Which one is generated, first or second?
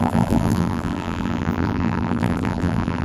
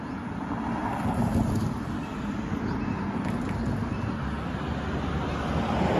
first